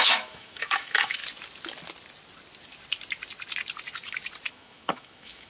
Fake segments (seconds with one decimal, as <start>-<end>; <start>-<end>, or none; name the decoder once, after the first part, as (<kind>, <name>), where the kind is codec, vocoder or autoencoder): 0.0-1.2 (autoencoder, DAC-VAE); 4.5-5.5